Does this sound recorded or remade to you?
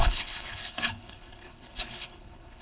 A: remade